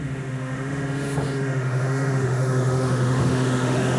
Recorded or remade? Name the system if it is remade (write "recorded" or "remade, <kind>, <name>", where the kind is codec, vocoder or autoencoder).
remade, autoencoder, DAC-VAE